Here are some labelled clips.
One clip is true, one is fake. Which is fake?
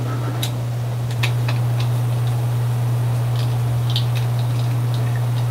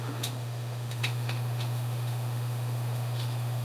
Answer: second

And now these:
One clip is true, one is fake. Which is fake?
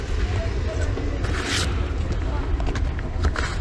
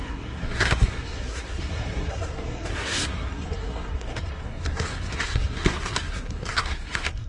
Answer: second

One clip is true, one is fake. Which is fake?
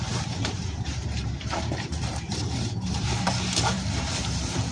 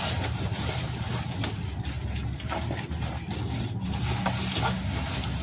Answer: first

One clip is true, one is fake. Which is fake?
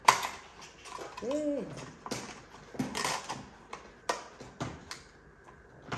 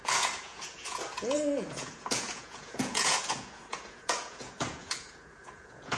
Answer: second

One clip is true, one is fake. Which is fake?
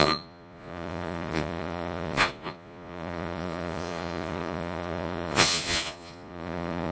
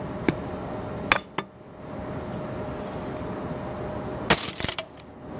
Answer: first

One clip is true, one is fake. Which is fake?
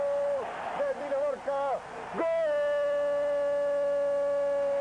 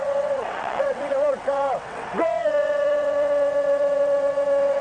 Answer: second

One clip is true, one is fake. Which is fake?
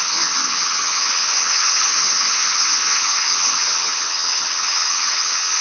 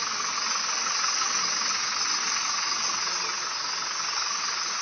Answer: first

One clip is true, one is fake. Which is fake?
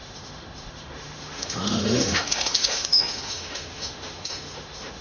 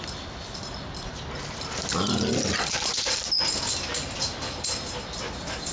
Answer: first